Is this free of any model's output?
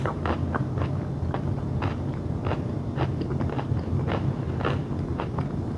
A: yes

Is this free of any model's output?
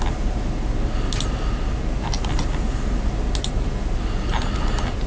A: yes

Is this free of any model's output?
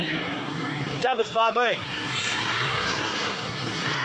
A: no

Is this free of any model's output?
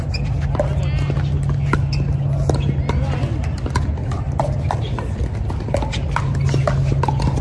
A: yes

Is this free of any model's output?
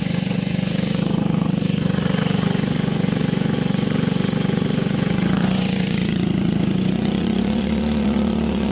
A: no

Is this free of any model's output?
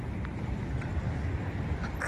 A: yes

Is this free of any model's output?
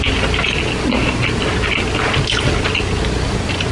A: yes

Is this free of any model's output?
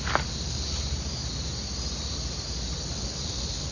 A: yes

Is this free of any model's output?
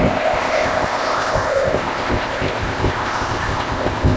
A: no